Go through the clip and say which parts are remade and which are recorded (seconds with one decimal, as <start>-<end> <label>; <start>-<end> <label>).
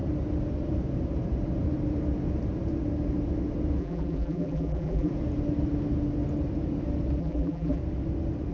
0.0-3.8 recorded; 3.8-5.1 remade; 5.1-7.2 recorded; 7.2-7.8 remade; 7.8-8.5 recorded